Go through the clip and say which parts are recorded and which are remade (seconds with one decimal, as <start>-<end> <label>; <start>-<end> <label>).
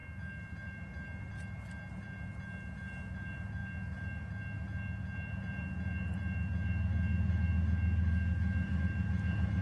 0.0-9.6 recorded